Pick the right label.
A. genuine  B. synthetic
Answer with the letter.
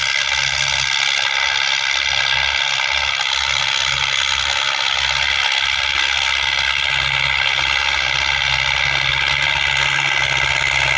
A